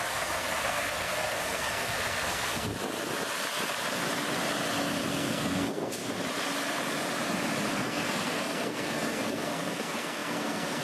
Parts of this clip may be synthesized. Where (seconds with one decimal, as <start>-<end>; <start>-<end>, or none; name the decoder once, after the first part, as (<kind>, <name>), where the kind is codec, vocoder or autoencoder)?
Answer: 0.0-2.7 (codec, SNAC); 5.1-6.0; 7.7-10.8